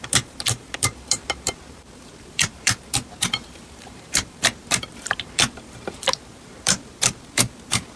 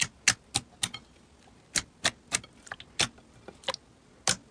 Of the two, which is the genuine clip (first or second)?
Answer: second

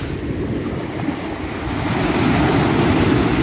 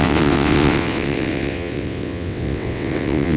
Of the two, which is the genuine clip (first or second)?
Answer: first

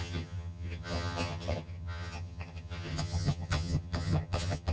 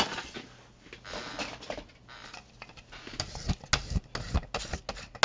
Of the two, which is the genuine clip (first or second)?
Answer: second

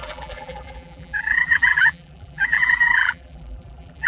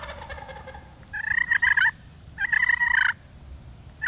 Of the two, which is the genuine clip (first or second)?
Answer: second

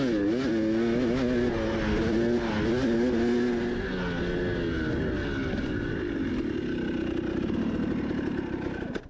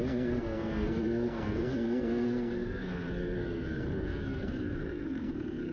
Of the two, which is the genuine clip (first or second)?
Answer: first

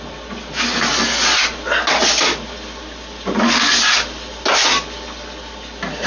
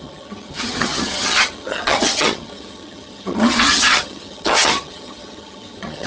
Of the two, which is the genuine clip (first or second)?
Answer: first